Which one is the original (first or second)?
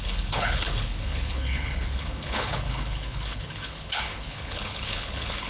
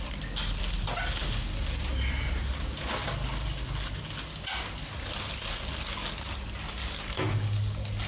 second